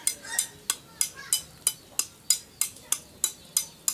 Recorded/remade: recorded